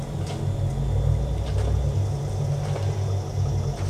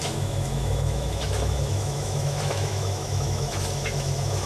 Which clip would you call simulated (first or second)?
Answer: second